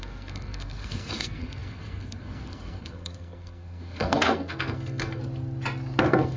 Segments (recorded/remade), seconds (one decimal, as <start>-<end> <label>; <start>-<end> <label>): 0.0-5.2 remade; 5.2-6.0 recorded; 6.0-6.4 remade

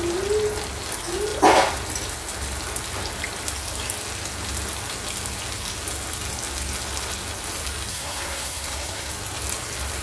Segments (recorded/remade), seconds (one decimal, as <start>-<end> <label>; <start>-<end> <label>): 0.0-7.9 recorded; 7.9-9.1 remade; 9.1-10.0 recorded

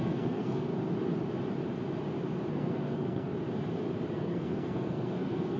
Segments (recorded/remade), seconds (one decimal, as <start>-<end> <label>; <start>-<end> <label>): 0.0-0.7 remade; 0.7-2.5 recorded; 2.5-3.3 remade; 3.3-4.1 recorded; 4.1-5.6 remade